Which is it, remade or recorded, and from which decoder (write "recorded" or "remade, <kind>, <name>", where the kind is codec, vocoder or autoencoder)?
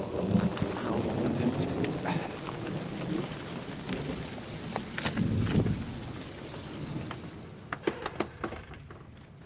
recorded